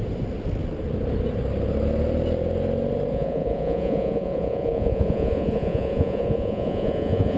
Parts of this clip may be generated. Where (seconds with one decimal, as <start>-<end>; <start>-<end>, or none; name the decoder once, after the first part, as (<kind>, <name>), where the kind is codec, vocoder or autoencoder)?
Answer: 3.1-7.4 (vocoder, Vocos)